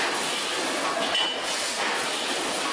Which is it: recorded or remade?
recorded